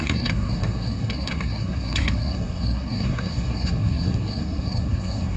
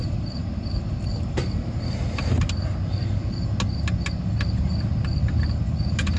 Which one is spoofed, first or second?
first